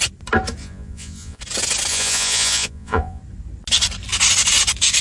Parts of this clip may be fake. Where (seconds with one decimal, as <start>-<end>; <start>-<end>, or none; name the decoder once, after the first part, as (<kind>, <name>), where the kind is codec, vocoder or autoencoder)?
0.6-1.4 (vocoder, Vocos); 1.9-3.2